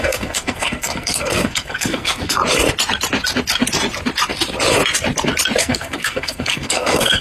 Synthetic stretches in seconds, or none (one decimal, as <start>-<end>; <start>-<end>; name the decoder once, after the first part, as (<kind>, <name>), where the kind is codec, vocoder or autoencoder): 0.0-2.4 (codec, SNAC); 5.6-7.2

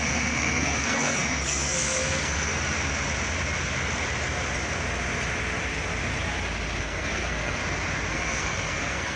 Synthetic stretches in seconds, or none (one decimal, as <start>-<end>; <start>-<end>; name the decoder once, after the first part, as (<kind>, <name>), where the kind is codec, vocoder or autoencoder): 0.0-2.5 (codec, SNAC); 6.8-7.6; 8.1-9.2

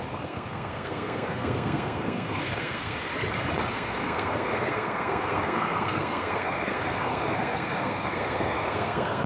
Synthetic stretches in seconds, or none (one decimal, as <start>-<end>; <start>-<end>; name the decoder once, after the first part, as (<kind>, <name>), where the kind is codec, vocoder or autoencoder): 0.0-3.1 (codec, SNAC); 3.7-9.3

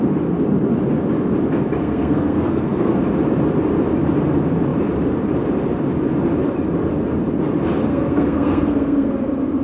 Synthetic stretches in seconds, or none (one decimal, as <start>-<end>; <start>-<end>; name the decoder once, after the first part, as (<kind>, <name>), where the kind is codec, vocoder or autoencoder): 1.8-3.0 (codec, SNAC); 7.9-9.1

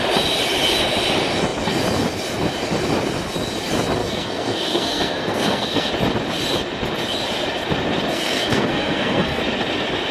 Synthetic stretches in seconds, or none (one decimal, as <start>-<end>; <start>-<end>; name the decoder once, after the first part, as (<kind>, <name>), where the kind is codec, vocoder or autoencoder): 4.0-5.9 (codec, SNAC); 8.1-9.4

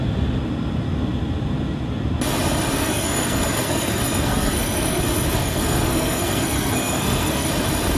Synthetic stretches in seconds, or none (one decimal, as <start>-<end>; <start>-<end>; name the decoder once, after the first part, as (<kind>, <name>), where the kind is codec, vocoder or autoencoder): 2.8-5.0 (codec, SNAC); 5.4-7.5

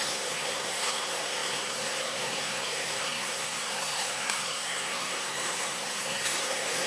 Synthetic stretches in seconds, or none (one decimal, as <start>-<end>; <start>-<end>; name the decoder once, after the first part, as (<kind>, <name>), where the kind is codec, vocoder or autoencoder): 0.0-6.9 (codec, SNAC)